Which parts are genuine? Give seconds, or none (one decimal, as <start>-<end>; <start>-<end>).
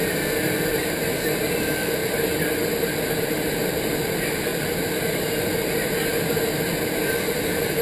0.0-7.8